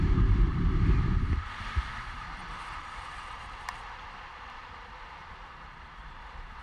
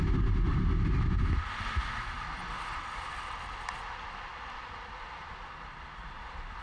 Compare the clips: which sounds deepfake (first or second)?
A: first